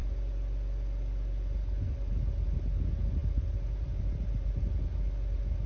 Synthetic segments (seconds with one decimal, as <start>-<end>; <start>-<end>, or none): none